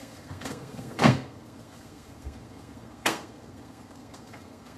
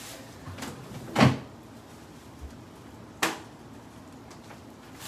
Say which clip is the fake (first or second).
first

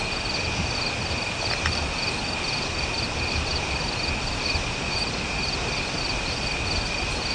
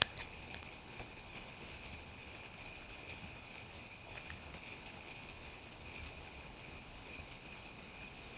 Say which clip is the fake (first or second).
second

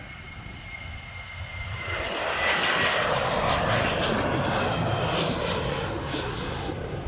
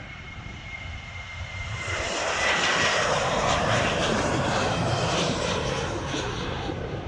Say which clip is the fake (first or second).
second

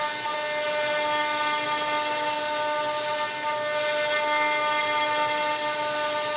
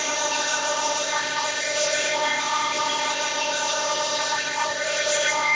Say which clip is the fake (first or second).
second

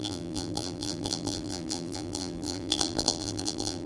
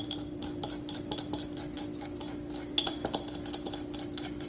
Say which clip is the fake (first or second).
first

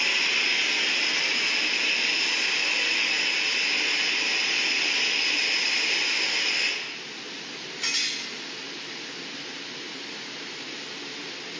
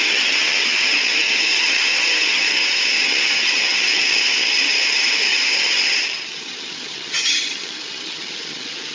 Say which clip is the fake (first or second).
second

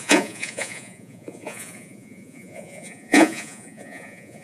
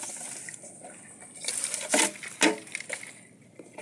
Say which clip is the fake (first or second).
first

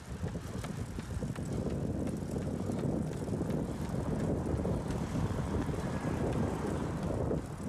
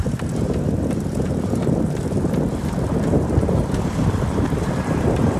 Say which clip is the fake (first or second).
second